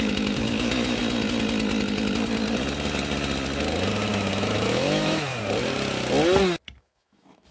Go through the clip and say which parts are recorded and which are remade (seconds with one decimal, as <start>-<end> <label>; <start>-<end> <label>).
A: 0.0-1.0 remade; 1.0-4.1 recorded; 4.1-5.3 remade; 5.3-6.8 recorded; 6.8-7.5 remade